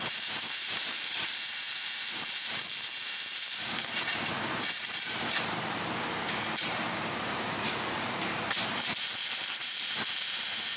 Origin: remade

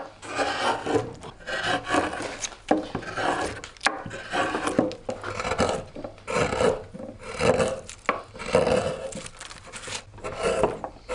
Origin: recorded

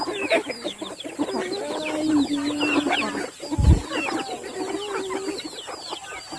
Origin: recorded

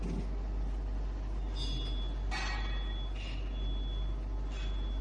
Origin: recorded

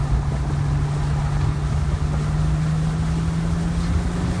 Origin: recorded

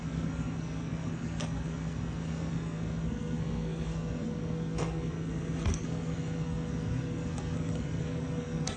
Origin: remade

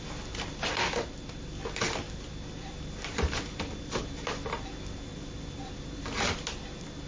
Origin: recorded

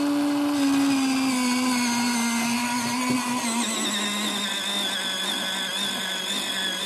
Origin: recorded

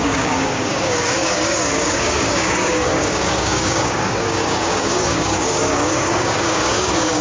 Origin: remade